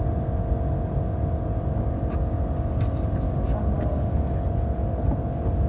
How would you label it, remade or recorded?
recorded